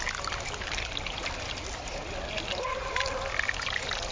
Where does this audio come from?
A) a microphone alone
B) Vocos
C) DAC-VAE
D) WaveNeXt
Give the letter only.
A